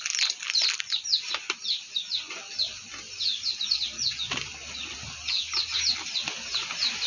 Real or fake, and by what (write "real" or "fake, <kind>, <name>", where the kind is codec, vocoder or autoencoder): real